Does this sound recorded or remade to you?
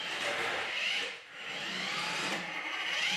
remade